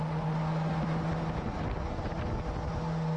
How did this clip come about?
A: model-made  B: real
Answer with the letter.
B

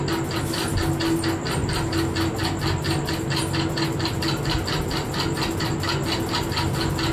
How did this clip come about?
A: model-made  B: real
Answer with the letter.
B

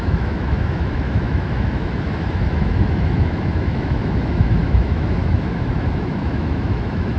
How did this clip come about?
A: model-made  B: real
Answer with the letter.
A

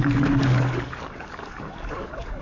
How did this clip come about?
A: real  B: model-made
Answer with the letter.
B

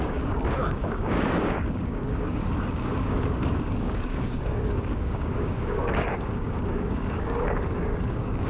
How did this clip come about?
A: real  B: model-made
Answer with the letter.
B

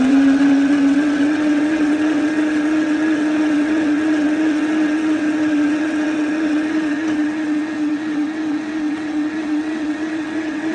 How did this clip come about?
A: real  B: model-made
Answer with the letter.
B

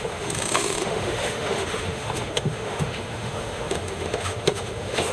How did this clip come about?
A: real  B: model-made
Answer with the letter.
B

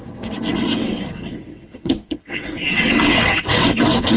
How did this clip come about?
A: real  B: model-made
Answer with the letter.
B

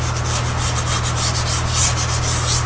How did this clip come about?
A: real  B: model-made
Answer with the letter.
A